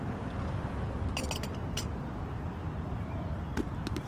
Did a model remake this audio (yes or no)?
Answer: no